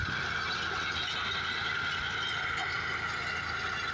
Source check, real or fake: real